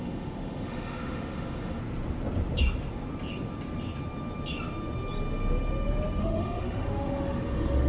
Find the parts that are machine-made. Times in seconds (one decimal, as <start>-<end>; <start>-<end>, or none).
0.0-1.8; 6.2-7.9